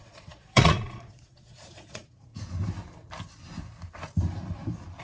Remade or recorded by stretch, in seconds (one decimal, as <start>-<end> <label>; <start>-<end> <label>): 0.0-2.3 remade; 2.3-5.0 recorded